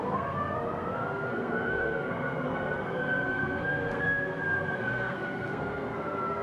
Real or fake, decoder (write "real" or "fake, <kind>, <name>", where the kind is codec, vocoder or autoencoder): fake, codec, SNAC